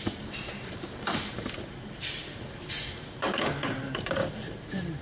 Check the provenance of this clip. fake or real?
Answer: fake